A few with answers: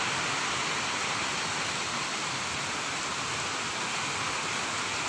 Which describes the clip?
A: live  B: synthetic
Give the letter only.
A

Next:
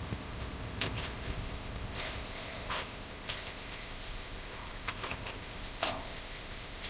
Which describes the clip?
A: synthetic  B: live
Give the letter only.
A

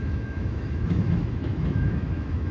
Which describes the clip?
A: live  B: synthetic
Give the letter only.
B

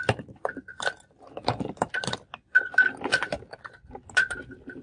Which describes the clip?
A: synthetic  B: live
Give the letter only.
B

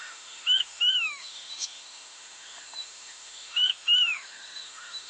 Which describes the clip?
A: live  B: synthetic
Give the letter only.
B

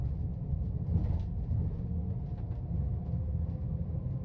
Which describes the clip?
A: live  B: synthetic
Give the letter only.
A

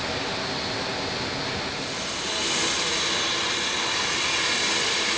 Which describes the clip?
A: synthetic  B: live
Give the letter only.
B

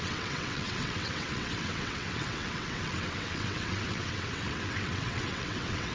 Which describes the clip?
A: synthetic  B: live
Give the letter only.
A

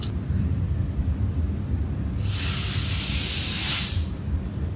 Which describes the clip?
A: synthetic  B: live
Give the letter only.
B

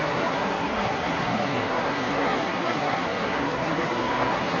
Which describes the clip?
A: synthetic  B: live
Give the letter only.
A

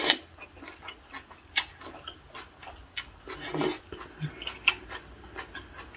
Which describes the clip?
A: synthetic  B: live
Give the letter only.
B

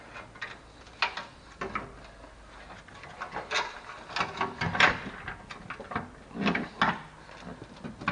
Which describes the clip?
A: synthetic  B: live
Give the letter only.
B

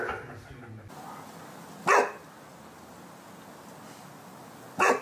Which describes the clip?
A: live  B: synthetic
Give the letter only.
A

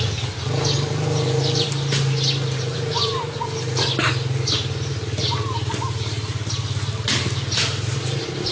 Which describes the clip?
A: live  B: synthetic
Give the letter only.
A